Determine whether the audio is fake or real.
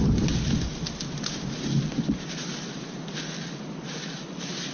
real